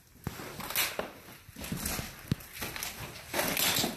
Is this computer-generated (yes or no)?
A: no